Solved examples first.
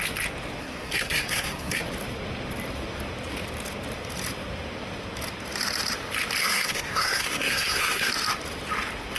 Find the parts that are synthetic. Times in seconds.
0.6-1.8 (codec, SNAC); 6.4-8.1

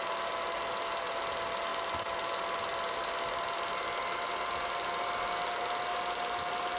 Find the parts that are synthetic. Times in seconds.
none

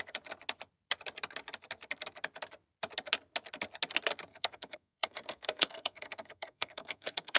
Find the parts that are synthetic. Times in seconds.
4.3-7.4 (codec, SNAC)

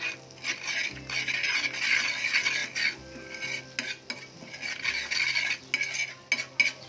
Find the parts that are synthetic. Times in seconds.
none

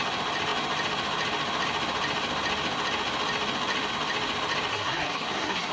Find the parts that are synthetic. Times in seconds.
4.7-5.7 (codec, SNAC)